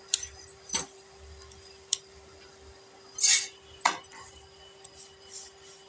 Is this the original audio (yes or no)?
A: no